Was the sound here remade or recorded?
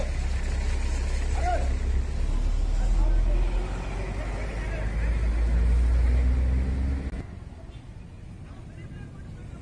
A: recorded